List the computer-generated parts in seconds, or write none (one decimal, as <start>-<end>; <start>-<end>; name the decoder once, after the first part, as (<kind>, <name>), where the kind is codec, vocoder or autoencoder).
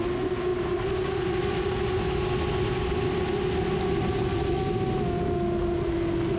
none